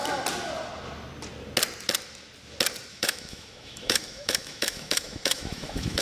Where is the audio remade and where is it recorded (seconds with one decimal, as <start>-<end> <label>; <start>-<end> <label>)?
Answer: 0.0-2.9 recorded; 2.9-6.0 remade